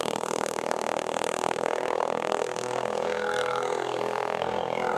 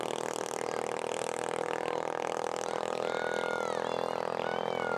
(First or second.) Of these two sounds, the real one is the second